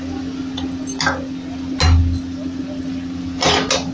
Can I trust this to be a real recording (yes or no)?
yes